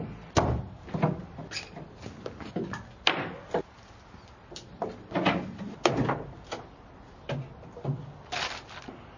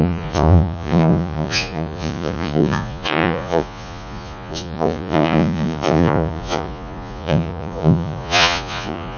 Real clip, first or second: first